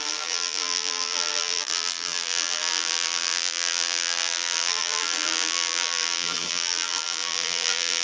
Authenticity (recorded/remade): remade